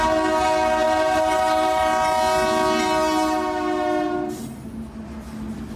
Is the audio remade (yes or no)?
no